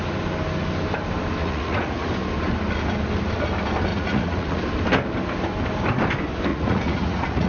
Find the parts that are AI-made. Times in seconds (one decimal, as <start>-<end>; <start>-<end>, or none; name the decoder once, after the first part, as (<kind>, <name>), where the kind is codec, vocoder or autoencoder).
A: 1.4-2.1 (vocoder, Vocos); 3.9-4.6; 6.5-7.5